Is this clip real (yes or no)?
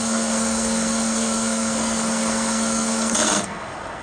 no